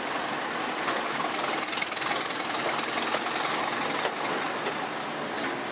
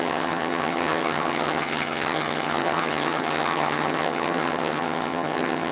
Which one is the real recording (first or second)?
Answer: first